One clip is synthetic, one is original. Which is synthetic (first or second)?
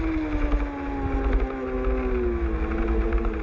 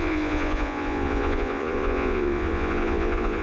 second